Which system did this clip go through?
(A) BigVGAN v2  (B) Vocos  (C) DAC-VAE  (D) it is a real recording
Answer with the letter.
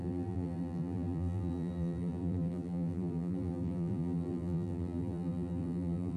A